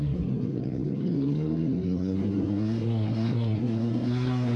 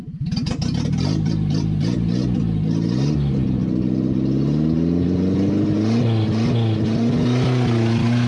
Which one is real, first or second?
second